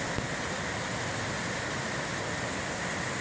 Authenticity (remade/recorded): recorded